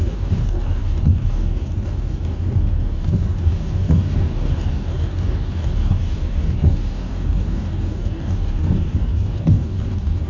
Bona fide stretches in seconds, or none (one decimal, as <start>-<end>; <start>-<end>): none